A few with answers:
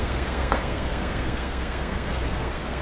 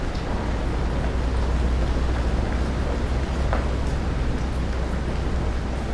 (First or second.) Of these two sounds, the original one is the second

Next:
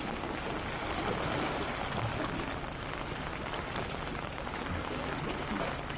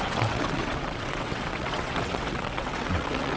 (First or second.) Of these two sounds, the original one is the first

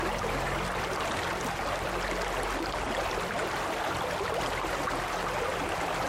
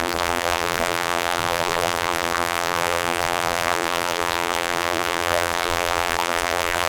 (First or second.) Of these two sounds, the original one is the first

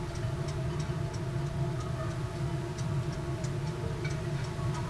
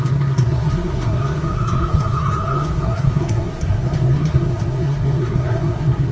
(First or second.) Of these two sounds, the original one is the first